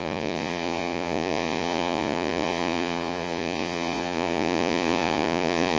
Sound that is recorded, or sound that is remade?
remade